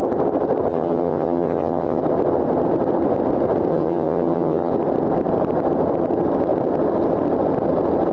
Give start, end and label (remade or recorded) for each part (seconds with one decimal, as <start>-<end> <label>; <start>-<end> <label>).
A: 0.0-0.7 recorded; 0.7-2.0 remade; 2.0-3.7 recorded; 3.7-4.7 remade; 4.7-8.1 recorded